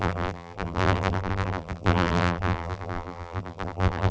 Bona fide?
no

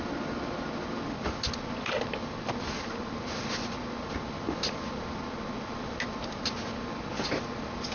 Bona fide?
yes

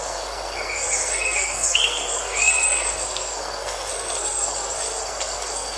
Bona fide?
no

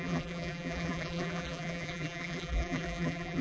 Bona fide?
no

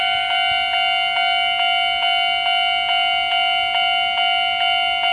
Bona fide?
yes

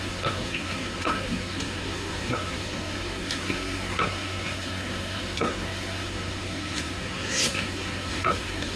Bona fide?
no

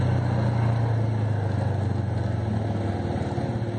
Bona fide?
yes